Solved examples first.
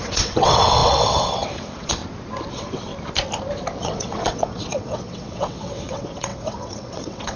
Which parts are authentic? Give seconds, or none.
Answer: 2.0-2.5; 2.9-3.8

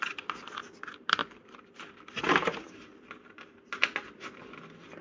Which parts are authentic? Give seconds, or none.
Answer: 0.0-5.0

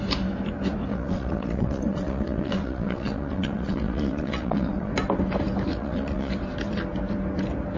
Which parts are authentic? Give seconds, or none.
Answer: 0.0-0.9; 4.9-5.7; 6.3-7.8